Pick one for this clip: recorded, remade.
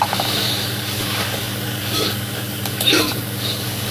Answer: remade